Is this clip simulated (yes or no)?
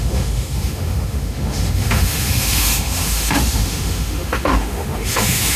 yes